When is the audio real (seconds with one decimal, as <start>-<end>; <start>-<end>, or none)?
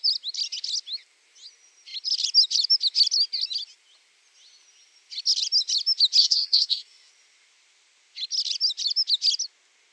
0.0-6.2; 7.1-9.9